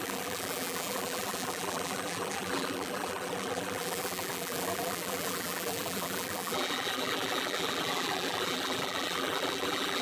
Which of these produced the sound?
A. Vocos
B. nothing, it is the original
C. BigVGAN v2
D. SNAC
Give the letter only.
C